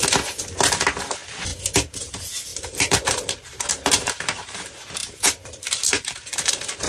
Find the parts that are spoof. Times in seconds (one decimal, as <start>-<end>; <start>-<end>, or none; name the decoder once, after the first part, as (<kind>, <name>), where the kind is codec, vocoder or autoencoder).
2.5-6.9 (vocoder, BigVGAN v2)